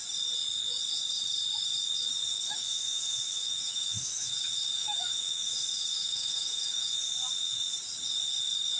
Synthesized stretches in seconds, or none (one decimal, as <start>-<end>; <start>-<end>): 2.3-4.3; 4.8-7.0